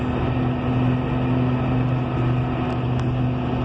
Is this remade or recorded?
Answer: recorded